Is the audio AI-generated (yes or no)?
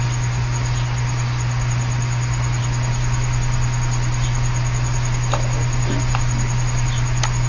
no